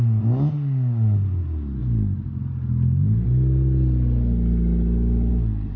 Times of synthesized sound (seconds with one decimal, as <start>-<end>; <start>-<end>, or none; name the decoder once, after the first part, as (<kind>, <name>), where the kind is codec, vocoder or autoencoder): none